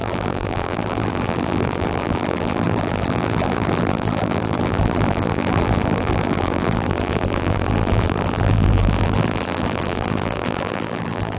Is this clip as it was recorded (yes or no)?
no